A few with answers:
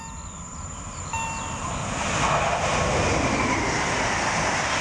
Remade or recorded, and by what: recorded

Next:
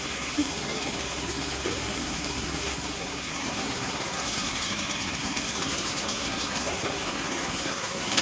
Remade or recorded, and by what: remade, codec, SNAC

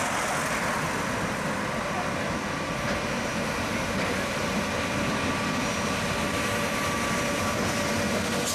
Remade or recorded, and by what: recorded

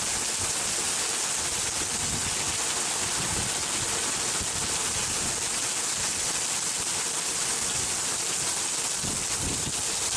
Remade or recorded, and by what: recorded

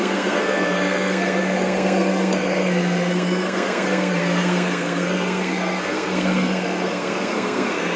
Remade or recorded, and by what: remade, codec, SNAC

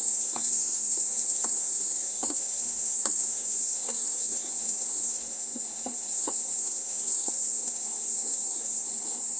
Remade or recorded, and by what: remade, codec, SNAC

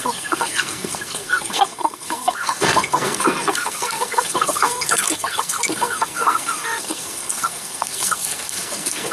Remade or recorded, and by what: remade, codec, SNAC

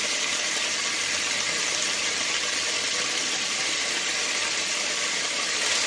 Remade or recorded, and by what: recorded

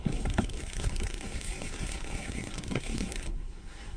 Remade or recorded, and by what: remade, codec, SNAC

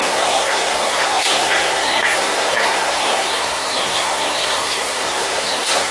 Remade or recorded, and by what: remade, codec, SNAC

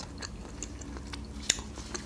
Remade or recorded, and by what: recorded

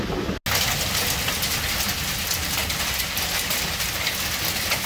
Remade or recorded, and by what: recorded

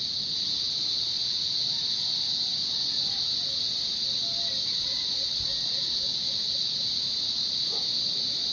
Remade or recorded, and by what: recorded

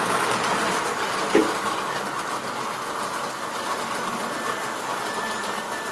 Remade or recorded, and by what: recorded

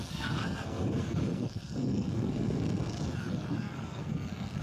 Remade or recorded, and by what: remade, codec, SNAC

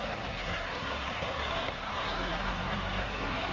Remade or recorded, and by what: remade, codec, SNAC